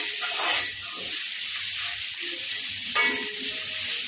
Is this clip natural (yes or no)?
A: yes